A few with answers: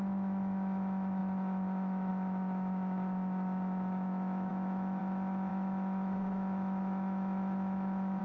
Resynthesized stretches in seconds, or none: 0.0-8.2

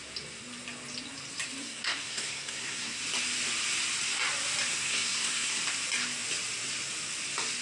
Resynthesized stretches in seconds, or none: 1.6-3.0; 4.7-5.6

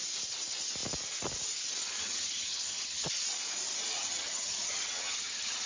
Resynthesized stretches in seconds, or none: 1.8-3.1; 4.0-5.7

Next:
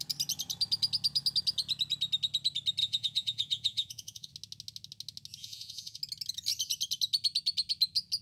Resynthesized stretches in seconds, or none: 2.8-4.3; 5.4-6.0